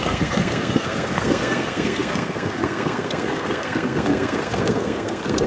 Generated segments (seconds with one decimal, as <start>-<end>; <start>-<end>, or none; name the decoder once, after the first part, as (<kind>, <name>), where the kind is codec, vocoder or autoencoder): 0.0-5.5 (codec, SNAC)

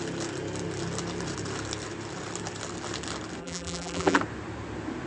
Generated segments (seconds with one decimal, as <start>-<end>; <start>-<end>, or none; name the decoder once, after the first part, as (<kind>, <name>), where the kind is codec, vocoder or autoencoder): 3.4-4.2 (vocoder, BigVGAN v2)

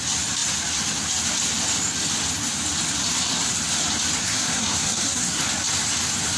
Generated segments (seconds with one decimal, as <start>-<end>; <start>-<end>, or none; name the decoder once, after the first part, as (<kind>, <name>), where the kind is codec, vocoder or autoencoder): 4.2-5.4 (codec, SNAC)

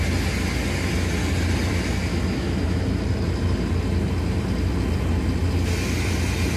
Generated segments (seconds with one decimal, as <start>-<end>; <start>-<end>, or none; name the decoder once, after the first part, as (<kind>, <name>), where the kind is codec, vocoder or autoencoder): 2.1-2.8 (autoencoder, DAC-VAE)

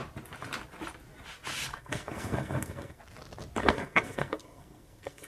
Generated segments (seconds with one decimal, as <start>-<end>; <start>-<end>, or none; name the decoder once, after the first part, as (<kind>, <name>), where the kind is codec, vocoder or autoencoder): 1.7-3.0 (codec, SNAC); 3.6-5.3